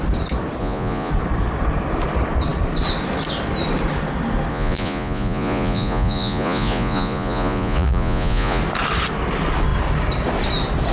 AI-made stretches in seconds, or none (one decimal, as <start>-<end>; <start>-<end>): 0.6-1.1; 4.5-8.6